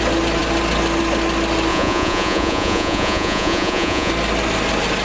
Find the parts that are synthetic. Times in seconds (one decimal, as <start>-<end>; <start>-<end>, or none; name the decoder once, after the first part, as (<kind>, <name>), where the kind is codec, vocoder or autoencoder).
1.7-4.1 (vocoder, Vocos)